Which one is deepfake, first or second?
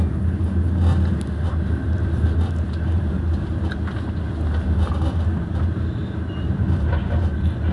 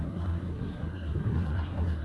second